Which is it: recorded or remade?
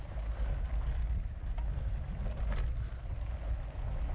recorded